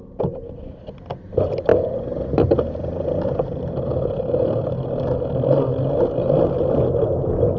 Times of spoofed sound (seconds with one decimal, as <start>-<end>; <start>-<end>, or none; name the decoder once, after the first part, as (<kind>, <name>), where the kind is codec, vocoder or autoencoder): none